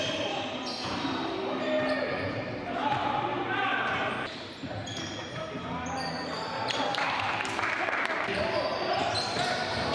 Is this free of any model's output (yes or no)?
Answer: no